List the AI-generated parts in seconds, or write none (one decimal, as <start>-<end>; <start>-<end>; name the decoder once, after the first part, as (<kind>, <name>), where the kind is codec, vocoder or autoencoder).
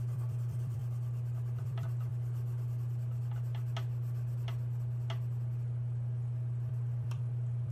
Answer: 0.0-0.8 (vocoder, BigVGAN v2); 1.6-2.1; 6.7-7.7